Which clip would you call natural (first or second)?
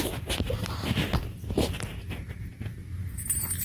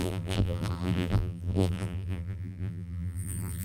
first